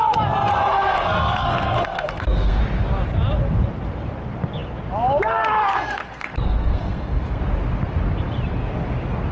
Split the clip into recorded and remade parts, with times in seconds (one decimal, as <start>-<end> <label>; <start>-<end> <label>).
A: 0.0-0.5 recorded; 0.5-2.6 remade; 2.6-5.7 recorded; 5.7-7.4 remade; 7.4-9.3 recorded